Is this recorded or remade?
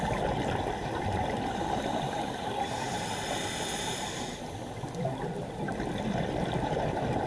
recorded